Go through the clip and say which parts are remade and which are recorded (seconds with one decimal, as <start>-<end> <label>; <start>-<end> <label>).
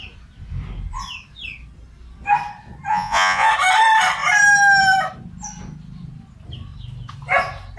0.0-2.9 recorded; 2.9-3.5 remade; 3.5-7.8 recorded